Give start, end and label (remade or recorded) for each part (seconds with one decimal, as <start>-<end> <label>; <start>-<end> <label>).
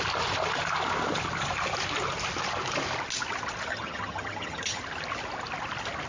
0.0-3.7 recorded; 3.7-4.8 remade; 4.8-6.1 recorded